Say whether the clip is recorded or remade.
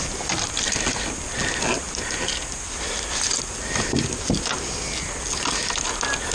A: recorded